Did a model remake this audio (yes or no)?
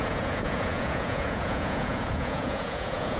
yes